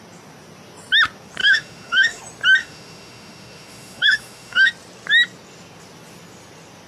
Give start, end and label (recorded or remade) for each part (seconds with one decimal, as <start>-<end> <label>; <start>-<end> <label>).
0.0-1.4 recorded; 1.4-2.2 remade; 2.2-2.6 recorded; 2.6-4.7 remade; 4.7-6.9 recorded